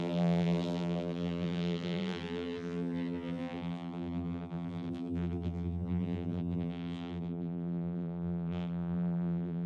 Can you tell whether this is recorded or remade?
remade